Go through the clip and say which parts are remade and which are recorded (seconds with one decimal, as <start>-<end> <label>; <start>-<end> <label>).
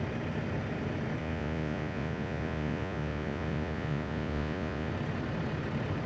0.0-1.2 recorded; 1.2-4.9 remade; 4.9-6.1 recorded